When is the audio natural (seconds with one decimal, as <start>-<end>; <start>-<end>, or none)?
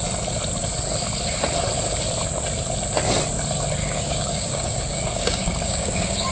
0.0-3.8